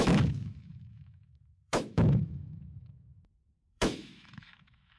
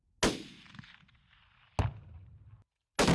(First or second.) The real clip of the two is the second